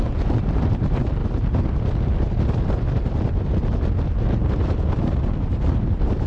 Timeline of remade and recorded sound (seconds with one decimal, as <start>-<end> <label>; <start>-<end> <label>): 0.0-1.2 remade; 1.2-5.0 recorded; 5.0-6.3 remade